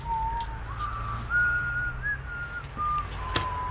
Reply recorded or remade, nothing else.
recorded